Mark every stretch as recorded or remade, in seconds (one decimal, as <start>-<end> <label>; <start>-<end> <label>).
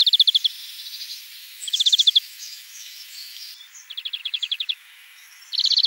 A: 0.0-1.4 recorded; 1.4-3.5 remade; 3.5-4.2 recorded; 4.2-5.4 remade; 5.4-5.9 recorded